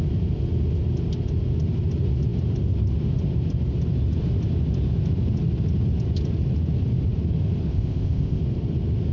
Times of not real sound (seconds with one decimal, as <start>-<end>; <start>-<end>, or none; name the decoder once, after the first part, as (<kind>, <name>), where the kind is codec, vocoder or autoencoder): 7.7-8.4 (codec, ZipCodec)